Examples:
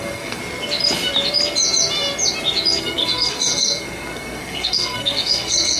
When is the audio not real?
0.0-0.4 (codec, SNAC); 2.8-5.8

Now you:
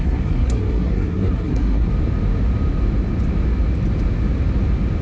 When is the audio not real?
0.0-1.9 (codec, SNAC)